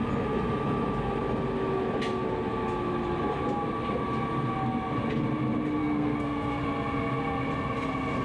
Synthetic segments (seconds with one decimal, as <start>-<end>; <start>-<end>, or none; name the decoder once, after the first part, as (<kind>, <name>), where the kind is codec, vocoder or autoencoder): 5.8-6.6 (codec, SNAC)